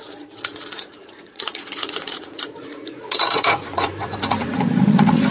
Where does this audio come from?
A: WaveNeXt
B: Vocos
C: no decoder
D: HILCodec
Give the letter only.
B